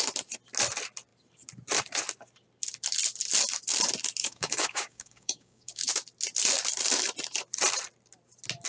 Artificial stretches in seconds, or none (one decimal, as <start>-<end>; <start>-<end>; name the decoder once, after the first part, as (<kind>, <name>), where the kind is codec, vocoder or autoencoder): 4.2-5.9 (codec, DAC)